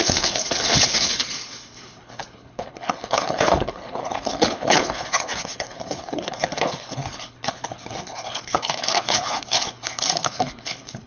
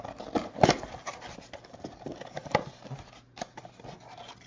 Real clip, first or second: second